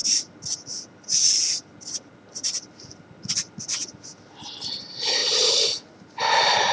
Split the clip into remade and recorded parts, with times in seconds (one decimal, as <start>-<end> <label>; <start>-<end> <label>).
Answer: 0.0-6.7 recorded